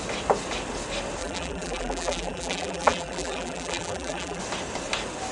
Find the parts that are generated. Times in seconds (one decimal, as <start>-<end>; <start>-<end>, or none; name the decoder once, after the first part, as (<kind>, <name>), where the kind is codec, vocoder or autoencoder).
1.2-4.4 (vocoder, BigVGAN v2)